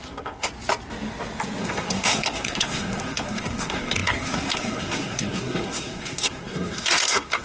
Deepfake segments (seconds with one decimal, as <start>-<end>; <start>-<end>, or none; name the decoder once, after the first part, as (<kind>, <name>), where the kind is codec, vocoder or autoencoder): 0.0-0.5 (codec, SNAC); 1.6-7.4